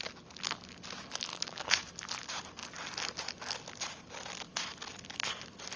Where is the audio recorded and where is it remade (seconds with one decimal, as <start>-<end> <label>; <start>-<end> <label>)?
0.0-1.3 recorded; 1.3-1.9 remade; 1.9-5.8 recorded